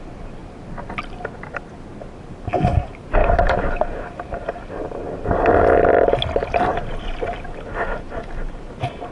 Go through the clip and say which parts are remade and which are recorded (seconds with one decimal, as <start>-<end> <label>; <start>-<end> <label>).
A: 0.0-3.2 recorded; 3.2-4.7 remade; 4.7-9.1 recorded